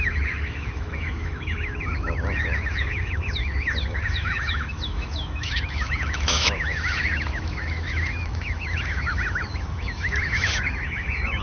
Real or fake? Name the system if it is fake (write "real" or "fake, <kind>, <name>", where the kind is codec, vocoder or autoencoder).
fake, autoencoder, DAC-VAE